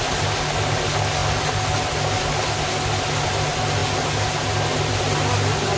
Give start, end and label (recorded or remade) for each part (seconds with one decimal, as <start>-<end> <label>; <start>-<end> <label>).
0.0-5.8 recorded